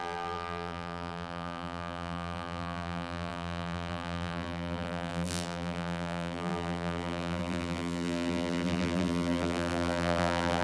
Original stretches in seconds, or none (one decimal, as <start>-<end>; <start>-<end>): none